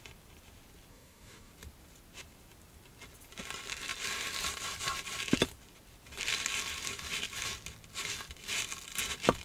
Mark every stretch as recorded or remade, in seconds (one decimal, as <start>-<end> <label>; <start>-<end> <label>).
0.0-0.9 recorded; 0.9-1.5 remade; 1.5-9.4 recorded

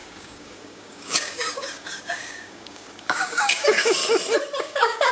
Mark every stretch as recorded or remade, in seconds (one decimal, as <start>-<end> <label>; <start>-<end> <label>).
0.0-4.0 remade; 4.0-4.6 recorded; 4.6-5.1 remade

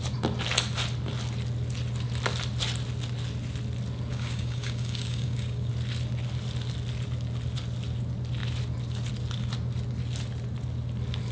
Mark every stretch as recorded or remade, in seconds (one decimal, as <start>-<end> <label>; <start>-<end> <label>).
0.0-4.1 recorded; 4.1-5.7 remade; 5.7-11.3 recorded

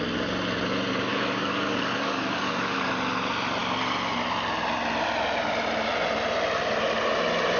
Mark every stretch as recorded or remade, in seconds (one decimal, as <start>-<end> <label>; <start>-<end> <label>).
0.0-1.1 recorded; 1.1-2.9 remade; 2.9-7.6 recorded

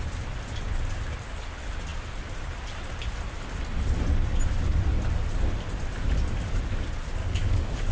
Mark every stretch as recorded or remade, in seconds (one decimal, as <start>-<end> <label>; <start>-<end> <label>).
0.0-7.2 recorded; 7.2-7.9 remade

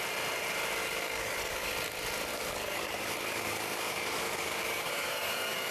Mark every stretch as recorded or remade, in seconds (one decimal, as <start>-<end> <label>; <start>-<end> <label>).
0.0-0.8 recorded; 0.8-1.7 remade; 1.7-2.3 recorded; 2.3-5.7 remade